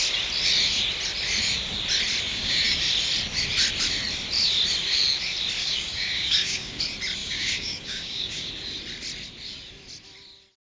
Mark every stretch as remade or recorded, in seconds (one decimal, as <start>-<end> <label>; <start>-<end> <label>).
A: 0.0-2.3 recorded; 2.3-2.8 remade; 2.8-5.6 recorded; 5.6-6.8 remade; 6.8-7.2 recorded; 7.2-8.5 remade; 8.5-10.7 recorded